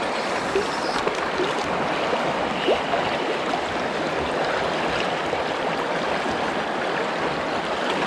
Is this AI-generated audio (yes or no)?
no